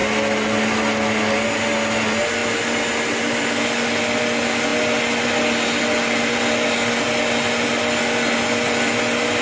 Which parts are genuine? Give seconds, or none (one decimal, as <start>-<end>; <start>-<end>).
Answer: 0.0-9.4